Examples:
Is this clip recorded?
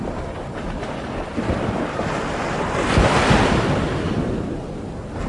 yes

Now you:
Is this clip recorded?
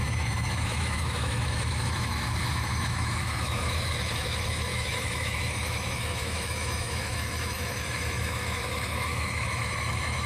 no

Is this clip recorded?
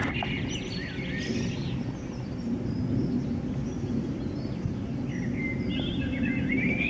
yes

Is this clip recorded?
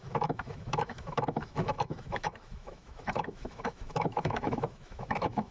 no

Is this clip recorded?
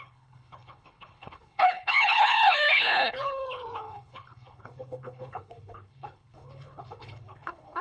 no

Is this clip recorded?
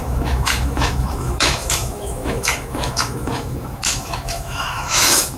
no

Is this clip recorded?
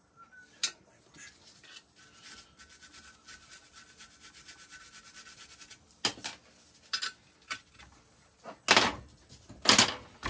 yes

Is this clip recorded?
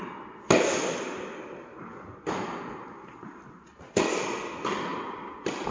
yes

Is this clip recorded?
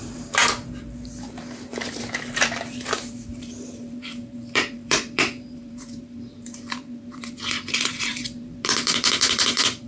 no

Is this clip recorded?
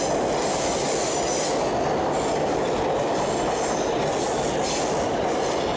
yes